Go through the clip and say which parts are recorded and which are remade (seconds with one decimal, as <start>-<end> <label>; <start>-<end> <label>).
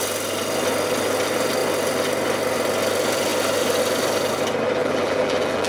0.0-4.8 recorded; 4.8-5.7 remade